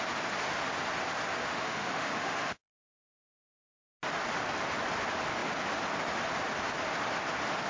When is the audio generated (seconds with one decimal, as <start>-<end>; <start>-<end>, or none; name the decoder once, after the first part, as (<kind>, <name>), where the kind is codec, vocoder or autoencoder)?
1.4-2.7 (autoencoder, DAC-VAE)